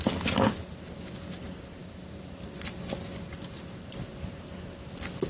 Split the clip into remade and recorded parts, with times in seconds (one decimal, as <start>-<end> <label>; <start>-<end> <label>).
0.0-1.8 recorded; 1.8-3.9 remade; 3.9-5.3 recorded